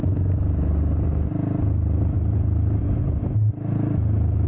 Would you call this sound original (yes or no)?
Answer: yes